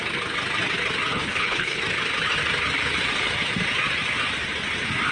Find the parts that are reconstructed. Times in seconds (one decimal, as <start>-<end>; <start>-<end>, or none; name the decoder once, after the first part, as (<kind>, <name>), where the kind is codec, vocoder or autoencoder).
1.1-1.8 (codec, HILCodec)